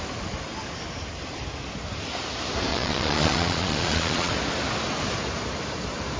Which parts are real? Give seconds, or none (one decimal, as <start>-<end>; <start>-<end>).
0.0-2.7; 4.3-6.2